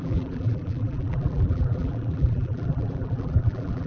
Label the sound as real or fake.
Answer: fake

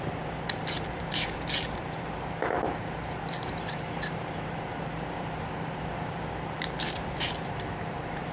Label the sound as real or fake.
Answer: fake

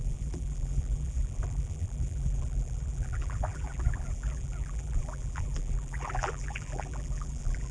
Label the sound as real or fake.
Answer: fake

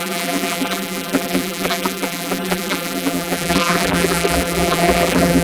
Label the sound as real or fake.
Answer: fake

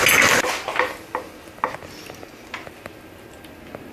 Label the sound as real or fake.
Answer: real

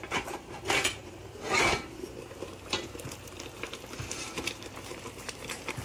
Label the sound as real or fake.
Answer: fake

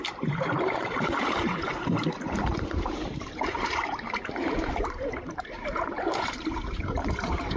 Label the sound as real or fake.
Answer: fake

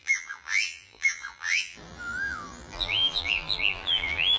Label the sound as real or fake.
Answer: fake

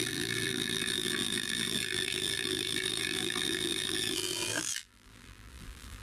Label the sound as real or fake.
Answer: fake